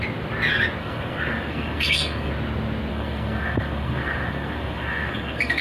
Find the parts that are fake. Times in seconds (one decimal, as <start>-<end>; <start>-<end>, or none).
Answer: 0.8-2.3; 2.9-5.6